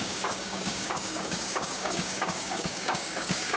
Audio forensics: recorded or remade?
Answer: remade